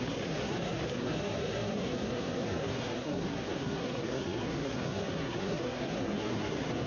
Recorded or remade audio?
remade